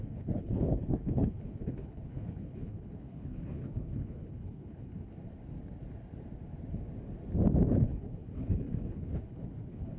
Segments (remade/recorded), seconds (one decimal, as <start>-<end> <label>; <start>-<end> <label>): 0.0-5.1 remade; 5.1-7.7 recorded; 7.7-10.0 remade